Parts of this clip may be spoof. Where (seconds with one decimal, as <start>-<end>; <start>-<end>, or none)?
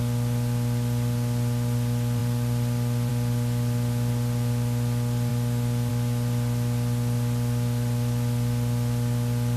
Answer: none